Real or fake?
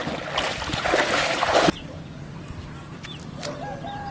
real